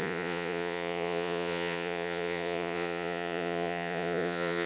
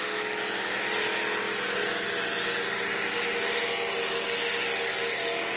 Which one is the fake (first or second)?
first